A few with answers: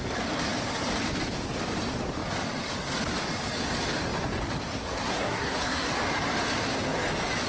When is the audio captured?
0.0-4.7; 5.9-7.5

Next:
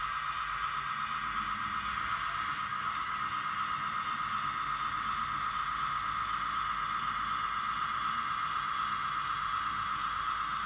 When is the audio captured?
0.0-2.7; 3.2-10.7

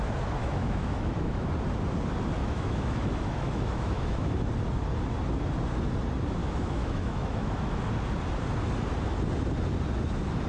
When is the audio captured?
0.0-0.4; 1.5-2.4; 4.3-6.4; 7.9-10.5

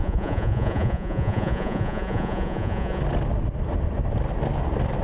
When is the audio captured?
3.0-5.0